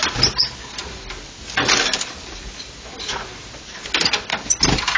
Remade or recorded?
recorded